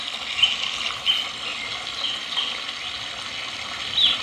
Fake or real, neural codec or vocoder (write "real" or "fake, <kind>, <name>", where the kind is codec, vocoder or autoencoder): real